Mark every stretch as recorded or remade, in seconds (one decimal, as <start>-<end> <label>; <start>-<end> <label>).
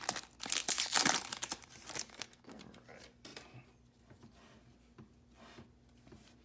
0.0-2.1 recorded; 2.1-2.6 remade; 2.6-6.4 recorded